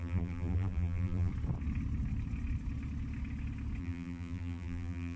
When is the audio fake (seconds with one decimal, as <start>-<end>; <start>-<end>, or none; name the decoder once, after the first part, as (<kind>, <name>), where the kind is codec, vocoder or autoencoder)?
0.0-1.3 (vocoder, BigVGAN v2); 3.8-5.2